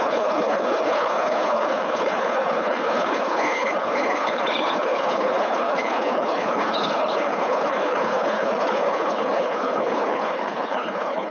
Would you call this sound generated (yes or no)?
yes